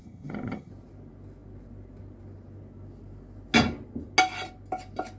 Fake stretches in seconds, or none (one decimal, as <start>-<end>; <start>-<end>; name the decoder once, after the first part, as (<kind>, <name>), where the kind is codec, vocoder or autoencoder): 0.0-0.7 (vocoder, HiFi-GAN)